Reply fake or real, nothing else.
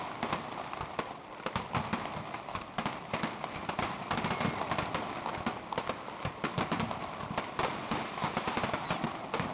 real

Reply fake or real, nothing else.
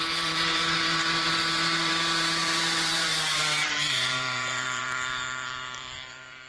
fake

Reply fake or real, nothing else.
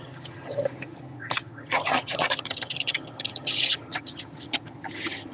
fake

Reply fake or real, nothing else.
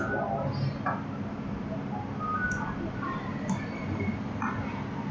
real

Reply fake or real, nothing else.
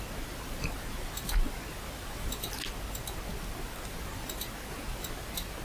real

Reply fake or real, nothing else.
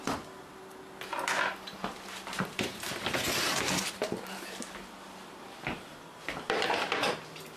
real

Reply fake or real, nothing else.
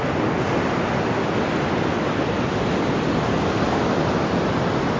real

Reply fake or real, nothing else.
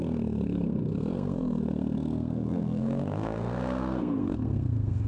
fake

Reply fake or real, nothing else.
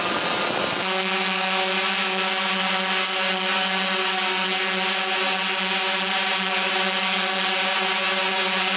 real